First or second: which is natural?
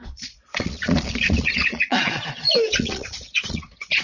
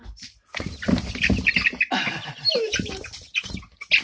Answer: second